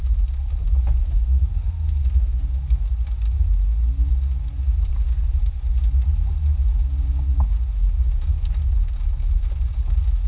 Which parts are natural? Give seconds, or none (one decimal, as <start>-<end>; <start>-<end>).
0.0-1.0; 2.4-10.3